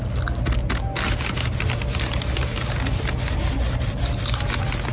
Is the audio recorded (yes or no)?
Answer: yes